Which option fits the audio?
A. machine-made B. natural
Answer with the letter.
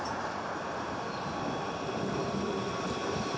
B